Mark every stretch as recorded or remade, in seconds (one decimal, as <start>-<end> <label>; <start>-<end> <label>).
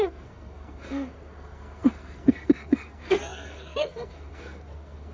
0.0-5.1 remade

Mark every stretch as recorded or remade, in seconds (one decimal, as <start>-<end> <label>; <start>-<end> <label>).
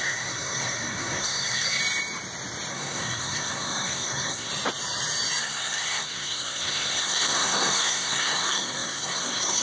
0.0-1.8 remade; 1.8-2.7 recorded; 2.7-4.5 remade; 4.5-5.4 recorded; 5.4-9.6 remade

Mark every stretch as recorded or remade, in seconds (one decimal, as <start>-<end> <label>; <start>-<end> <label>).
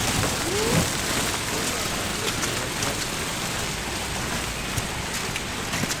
0.0-6.0 recorded